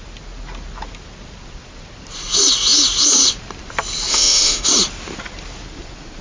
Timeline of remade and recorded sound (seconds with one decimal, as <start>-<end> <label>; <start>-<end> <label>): 0.0-4.1 recorded; 4.1-4.7 remade; 4.7-6.2 recorded